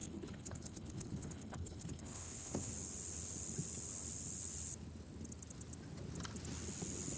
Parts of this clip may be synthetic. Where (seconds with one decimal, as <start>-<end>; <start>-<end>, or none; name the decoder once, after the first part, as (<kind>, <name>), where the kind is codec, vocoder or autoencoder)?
0.0-2.7 (codec, HILCodec)